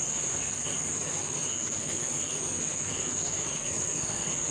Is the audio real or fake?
fake